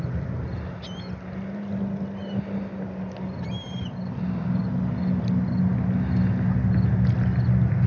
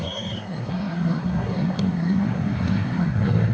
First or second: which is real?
first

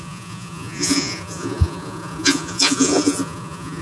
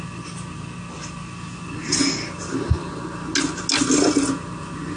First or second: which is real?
second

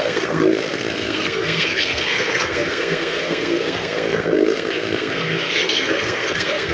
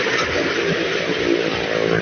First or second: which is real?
second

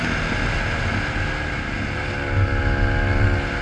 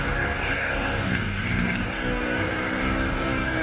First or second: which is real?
first